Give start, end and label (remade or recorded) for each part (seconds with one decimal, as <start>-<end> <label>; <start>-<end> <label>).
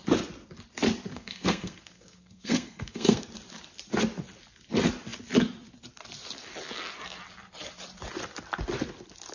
0.0-1.1 recorded; 1.1-3.3 remade; 3.3-9.3 recorded